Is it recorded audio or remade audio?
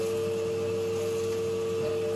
recorded